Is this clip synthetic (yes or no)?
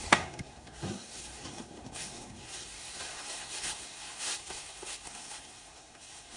yes